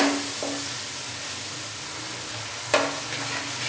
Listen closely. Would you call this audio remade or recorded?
recorded